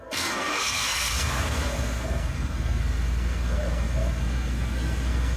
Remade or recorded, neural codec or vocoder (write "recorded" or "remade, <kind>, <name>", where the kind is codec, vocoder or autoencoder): remade, codec, SNAC